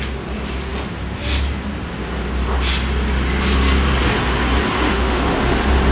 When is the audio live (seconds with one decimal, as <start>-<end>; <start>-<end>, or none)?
0.0-4.9; 5.4-5.9